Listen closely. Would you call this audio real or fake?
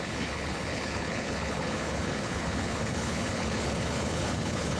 fake